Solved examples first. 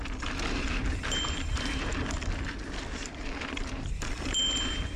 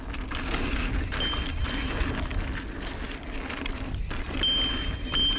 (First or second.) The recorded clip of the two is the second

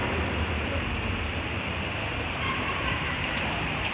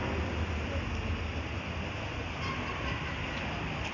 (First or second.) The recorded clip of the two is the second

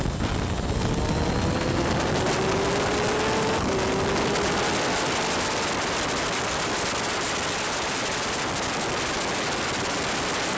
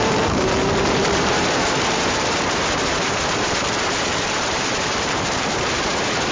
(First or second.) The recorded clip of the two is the first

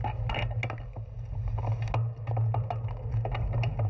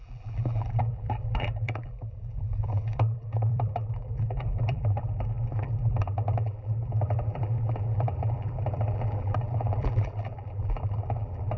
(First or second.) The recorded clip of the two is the first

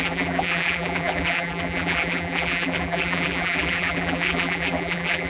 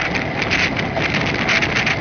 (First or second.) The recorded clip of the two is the second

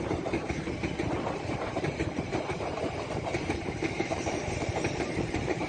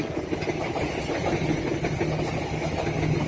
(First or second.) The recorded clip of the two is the second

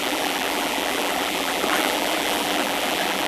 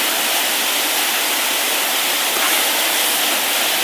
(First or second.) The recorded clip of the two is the second